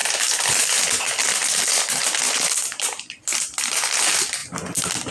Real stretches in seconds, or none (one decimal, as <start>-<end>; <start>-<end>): 0.0-5.1